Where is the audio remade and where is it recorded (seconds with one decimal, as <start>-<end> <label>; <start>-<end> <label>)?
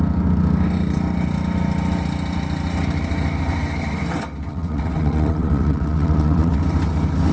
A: 0.0-4.5 recorded; 4.5-6.6 remade; 6.6-7.3 recorded